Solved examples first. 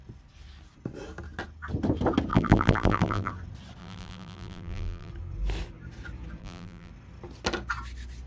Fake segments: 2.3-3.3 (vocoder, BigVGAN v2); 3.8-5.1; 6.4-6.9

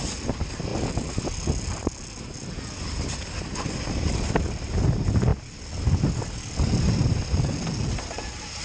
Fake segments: none

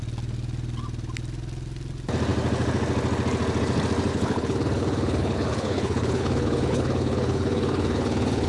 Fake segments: 4.1-8.5 (codec, HILCodec)